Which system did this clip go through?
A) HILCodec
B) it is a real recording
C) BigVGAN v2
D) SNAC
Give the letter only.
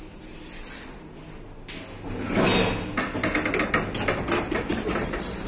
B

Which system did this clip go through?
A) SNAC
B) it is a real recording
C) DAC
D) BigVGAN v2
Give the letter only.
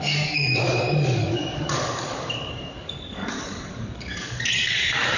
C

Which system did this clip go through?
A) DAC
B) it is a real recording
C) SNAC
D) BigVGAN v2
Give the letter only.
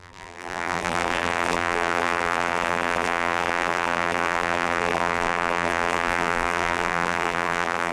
D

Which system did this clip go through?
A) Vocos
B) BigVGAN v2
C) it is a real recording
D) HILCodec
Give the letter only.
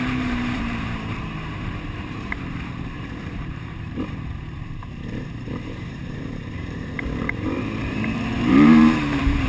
B